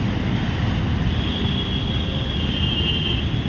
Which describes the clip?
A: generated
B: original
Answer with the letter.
B